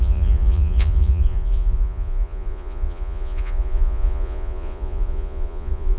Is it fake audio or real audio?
fake